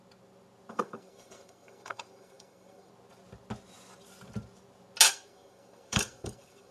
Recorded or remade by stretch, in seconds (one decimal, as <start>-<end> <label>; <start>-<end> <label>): 0.0-0.7 recorded; 0.7-2.9 remade; 2.9-5.1 recorded; 5.1-6.7 remade